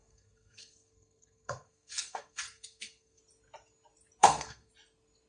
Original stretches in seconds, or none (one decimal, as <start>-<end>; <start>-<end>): 3.2-4.2; 4.7-5.3